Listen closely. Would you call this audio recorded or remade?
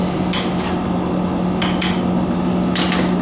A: recorded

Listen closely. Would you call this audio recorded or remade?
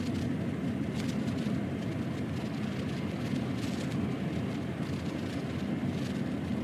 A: recorded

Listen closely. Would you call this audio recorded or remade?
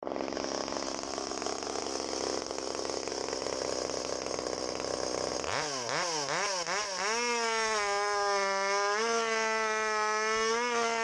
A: recorded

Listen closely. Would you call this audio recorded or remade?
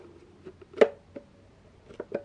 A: recorded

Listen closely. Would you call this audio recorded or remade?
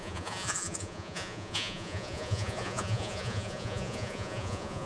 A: remade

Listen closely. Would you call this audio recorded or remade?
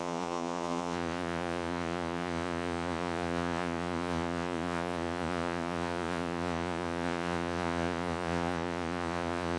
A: remade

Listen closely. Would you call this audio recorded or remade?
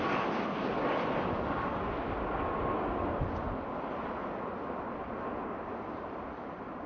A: recorded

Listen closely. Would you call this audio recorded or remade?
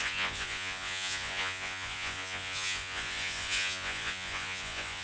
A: remade